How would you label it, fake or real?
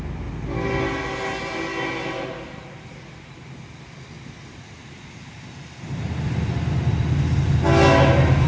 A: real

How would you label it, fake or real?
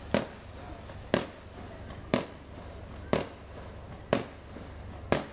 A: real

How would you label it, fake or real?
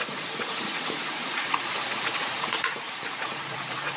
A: fake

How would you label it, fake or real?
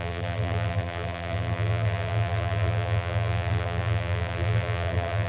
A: fake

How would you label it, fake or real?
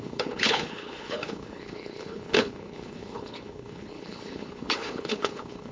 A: fake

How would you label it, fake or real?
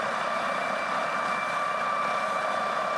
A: real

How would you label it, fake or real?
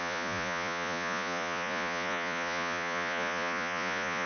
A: fake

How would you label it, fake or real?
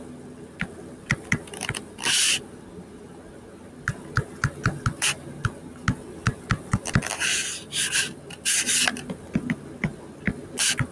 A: real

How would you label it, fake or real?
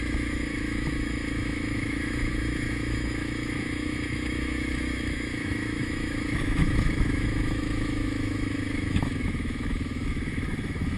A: fake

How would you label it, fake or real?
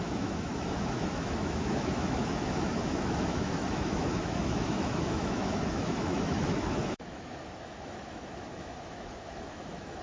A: fake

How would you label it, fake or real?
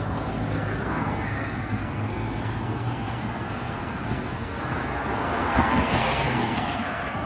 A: fake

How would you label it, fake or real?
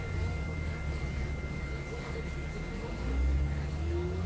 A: fake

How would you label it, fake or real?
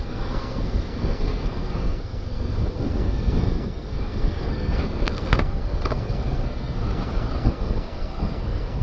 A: fake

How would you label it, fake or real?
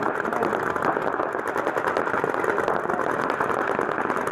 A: real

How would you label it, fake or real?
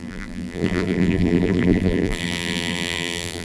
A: fake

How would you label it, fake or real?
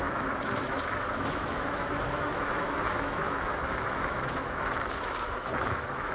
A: fake